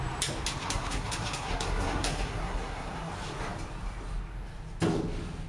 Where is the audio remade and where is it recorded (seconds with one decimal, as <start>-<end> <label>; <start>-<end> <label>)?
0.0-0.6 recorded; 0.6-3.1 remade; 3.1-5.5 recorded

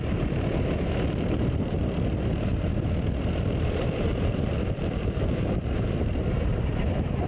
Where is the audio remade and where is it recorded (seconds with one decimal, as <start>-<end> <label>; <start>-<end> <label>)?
0.0-2.5 remade; 2.5-3.3 recorded; 3.3-7.3 remade

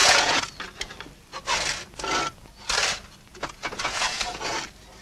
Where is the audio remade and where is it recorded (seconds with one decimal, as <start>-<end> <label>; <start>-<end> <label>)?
0.0-0.5 remade; 0.5-3.3 recorded; 3.3-4.6 remade; 4.6-5.0 recorded